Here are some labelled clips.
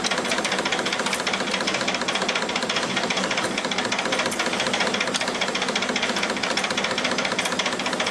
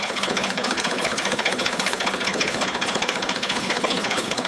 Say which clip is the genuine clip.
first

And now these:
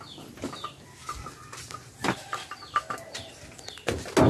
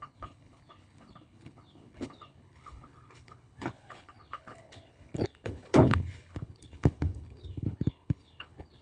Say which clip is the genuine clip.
first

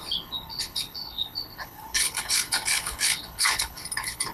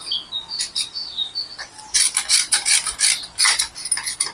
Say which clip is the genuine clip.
second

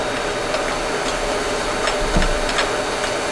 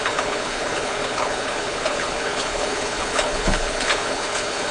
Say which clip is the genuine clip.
first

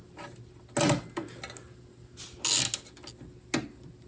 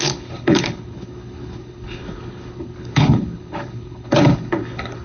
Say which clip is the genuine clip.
first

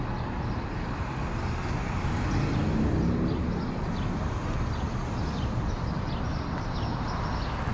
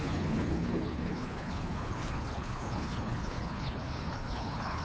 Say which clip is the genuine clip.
first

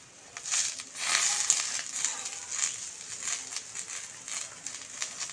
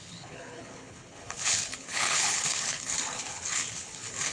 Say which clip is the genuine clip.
first